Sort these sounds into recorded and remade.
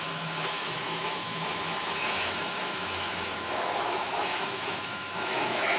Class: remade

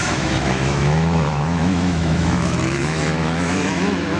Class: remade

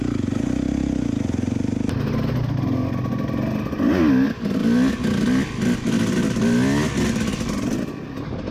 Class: recorded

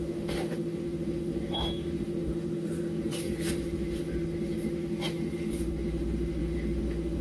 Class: remade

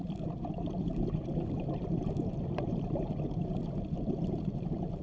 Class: recorded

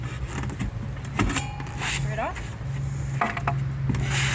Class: recorded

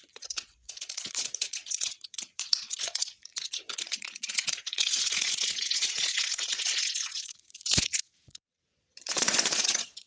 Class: remade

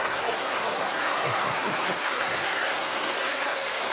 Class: remade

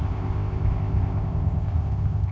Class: remade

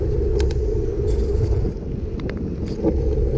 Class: recorded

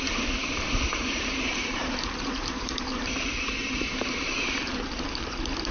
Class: remade